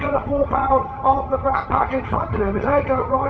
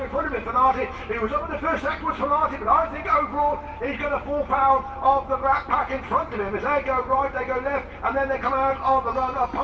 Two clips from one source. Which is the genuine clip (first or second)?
second